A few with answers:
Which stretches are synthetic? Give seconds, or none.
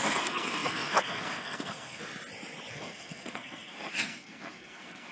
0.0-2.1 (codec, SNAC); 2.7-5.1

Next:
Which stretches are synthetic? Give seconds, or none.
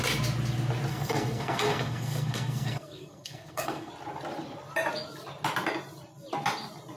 0.9-3.9 (codec, SNAC)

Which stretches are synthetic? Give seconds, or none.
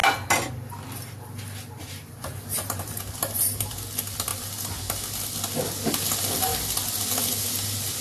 none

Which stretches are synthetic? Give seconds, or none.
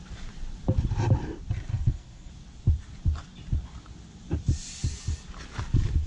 1.7-2.3 (codec, SNAC)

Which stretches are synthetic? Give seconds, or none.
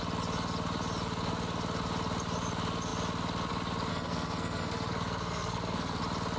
3.9-6.0 (codec, SNAC)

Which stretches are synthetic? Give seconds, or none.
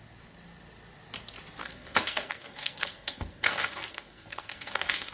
1.6-5.1 (codec, SNAC)